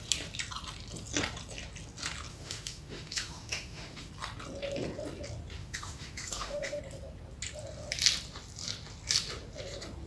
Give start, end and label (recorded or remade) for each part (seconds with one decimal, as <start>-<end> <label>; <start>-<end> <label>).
0.0-2.3 recorded; 2.3-4.1 remade; 4.1-5.6 recorded; 5.6-6.8 remade; 6.8-10.1 recorded

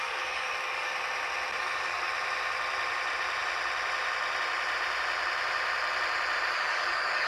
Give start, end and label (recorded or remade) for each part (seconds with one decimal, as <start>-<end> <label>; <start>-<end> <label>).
0.0-0.9 remade; 0.9-1.6 recorded; 1.6-2.1 remade; 2.1-6.5 recorded; 6.5-7.3 remade

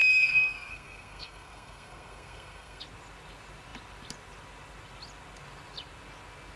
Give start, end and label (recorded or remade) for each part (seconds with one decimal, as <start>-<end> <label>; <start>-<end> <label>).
0.0-2.8 remade; 2.8-6.6 recorded

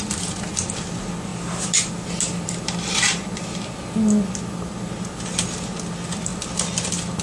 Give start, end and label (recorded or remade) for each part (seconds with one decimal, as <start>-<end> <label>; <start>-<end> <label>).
0.0-7.2 recorded

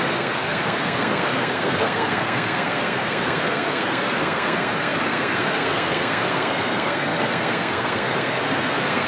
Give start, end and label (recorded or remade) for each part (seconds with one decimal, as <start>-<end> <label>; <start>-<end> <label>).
0.0-9.1 remade

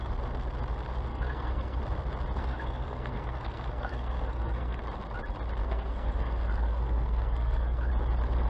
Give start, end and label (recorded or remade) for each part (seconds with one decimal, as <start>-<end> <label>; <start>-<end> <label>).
0.0-1.1 recorded; 1.1-1.8 remade; 1.8-2.4 recorded; 2.4-4.8 remade; 4.8-5.6 recorded; 5.6-7.9 remade; 7.9-8.5 recorded